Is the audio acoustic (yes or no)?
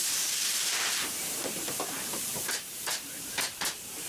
no